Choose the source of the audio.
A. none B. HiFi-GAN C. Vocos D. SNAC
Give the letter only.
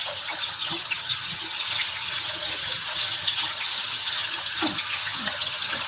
B